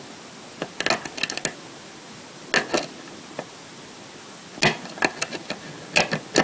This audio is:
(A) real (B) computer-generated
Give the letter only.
A